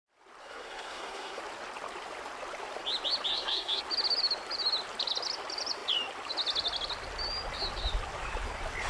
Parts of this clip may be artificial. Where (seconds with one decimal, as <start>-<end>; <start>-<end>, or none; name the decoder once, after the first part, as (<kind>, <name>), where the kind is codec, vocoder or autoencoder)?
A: 0.4-1.4 (codec, SNAC); 3.3-3.8